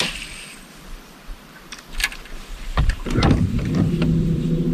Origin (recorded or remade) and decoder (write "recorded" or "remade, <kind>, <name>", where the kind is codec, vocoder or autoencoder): remade, vocoder, BigVGAN v2